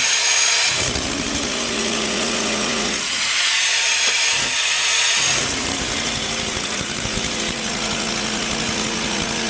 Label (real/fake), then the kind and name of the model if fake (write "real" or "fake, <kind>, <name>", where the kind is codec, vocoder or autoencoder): fake, vocoder, Vocos